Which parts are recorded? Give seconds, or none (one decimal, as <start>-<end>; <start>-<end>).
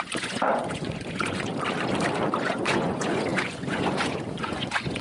1.5-2.4